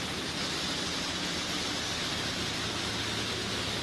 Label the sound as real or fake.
real